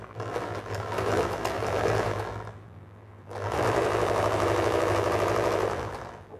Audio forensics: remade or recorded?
remade